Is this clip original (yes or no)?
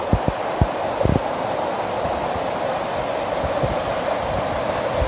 yes